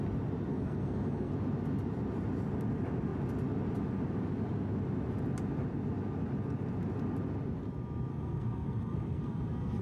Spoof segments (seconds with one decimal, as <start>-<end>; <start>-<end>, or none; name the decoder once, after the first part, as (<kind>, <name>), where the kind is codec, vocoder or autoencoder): 0.5-1.3 (codec, SNAC); 8.1-9.8